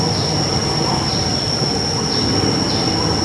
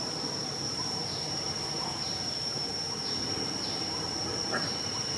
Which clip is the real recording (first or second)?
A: first